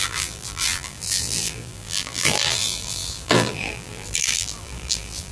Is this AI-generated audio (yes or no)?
yes